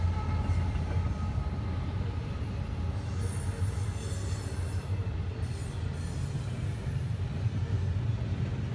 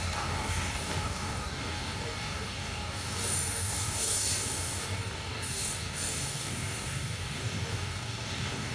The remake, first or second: second